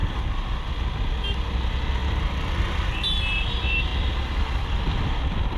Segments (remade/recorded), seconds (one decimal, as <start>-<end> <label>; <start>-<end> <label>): 0.0-5.6 recorded